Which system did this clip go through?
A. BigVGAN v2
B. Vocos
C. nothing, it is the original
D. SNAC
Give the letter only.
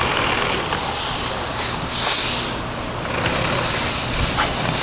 C